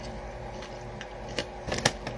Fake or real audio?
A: real